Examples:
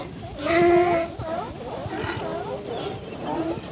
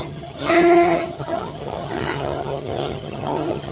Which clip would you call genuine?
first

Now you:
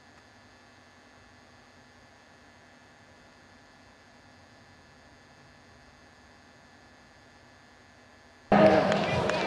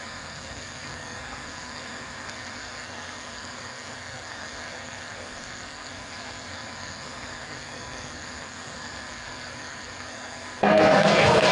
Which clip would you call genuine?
first